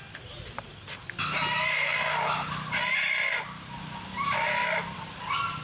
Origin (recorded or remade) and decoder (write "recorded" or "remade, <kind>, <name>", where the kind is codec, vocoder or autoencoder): recorded